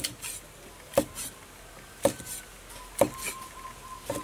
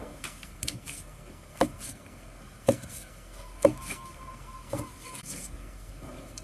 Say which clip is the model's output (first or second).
second